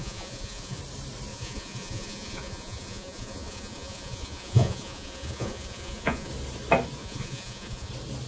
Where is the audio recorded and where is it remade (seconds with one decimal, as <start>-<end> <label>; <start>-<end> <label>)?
0.0-0.8 remade; 0.8-1.3 recorded; 1.3-6.3 remade; 6.3-7.0 recorded; 7.0-7.9 remade; 7.9-8.3 recorded